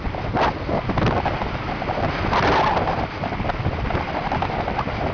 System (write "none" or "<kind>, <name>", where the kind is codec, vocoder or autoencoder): vocoder, BigVGAN v2